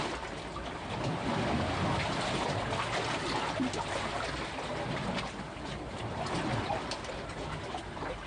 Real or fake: real